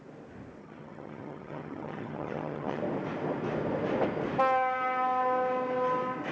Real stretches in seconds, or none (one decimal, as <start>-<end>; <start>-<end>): 0.0-0.6; 2.8-6.3